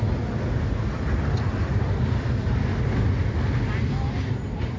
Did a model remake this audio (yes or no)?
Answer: no